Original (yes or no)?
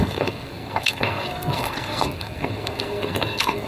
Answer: no